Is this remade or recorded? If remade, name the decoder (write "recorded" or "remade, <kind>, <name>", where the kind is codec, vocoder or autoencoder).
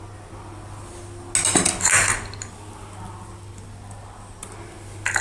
recorded